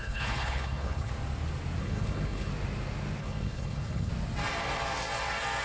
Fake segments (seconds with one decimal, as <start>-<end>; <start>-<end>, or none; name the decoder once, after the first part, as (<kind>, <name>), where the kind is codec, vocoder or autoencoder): 0.0-1.1 (codec, HILCodec); 1.8-2.5; 3.2-4.1